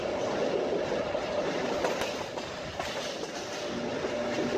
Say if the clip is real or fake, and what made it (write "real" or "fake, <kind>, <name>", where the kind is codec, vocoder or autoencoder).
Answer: real